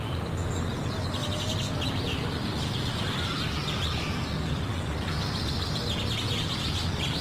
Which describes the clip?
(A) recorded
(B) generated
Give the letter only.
A